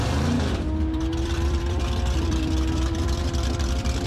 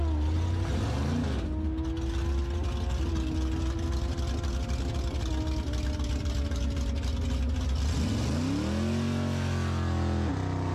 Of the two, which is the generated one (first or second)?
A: first